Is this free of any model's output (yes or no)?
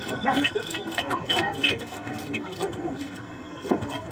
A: no